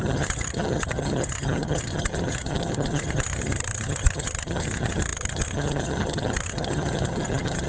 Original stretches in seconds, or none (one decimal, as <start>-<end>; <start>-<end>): none